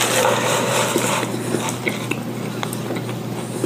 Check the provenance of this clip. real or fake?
real